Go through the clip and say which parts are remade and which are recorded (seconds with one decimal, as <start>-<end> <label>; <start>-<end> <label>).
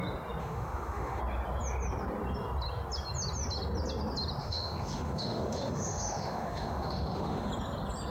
0.0-0.4 recorded; 0.4-1.2 remade; 1.2-4.4 recorded; 4.4-7.5 remade; 7.5-8.1 recorded